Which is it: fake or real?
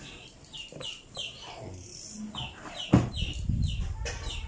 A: real